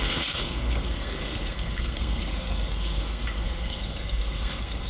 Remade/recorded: remade